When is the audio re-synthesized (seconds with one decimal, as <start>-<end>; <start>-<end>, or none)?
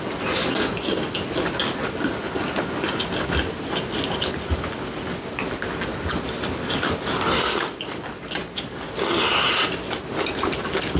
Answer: none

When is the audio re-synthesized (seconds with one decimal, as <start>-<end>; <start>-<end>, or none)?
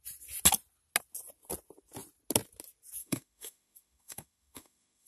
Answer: 3.0-5.1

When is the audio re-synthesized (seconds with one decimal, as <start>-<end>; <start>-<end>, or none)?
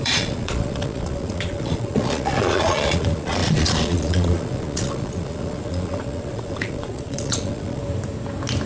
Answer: 0.0-7.8